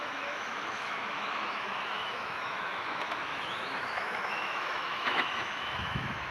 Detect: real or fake fake